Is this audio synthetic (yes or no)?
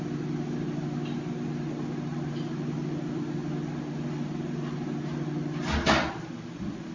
no